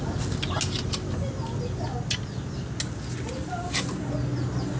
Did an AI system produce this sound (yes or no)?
no